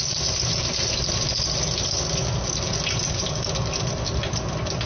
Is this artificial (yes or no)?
no